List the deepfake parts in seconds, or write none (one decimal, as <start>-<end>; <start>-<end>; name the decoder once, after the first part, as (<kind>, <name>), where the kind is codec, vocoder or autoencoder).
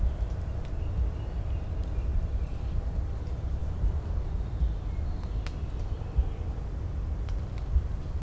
2.1-2.8 (vocoder, BigVGAN v2); 3.6-4.3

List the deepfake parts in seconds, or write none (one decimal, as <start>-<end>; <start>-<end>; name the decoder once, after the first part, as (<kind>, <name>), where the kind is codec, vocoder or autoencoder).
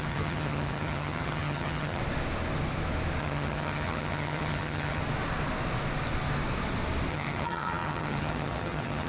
0.0-2.0 (vocoder, HiFi-GAN); 3.2-5.0; 7.1-9.1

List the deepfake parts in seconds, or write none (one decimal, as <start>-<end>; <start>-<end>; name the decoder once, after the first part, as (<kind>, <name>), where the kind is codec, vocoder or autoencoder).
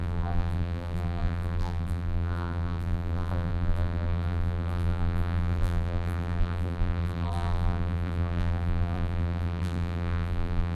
0.0-10.7 (vocoder, BigVGAN v2)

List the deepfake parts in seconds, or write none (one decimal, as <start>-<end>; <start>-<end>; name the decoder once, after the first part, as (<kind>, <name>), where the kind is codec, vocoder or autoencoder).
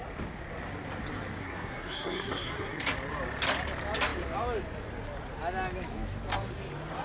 1.4-2.8 (codec, SNAC)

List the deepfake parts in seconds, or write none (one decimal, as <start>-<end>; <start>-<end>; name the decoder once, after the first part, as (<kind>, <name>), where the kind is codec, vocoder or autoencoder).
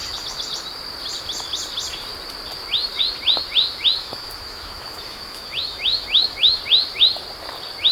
4.0-6.6 (autoencoder, DAC-VAE)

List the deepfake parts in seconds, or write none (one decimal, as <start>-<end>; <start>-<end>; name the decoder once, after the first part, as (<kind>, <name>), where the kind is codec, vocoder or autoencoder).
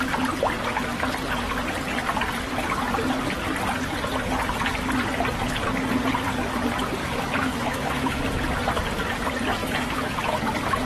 7.0-8.2 (autoencoder, DAC-VAE); 9.6-10.4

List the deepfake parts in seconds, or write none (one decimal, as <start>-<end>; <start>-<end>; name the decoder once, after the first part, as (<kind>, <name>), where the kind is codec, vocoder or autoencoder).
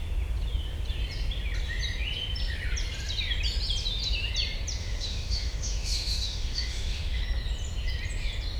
4.8-7.2 (autoencoder, DAC-VAE)